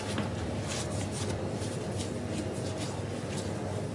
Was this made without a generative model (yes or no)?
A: yes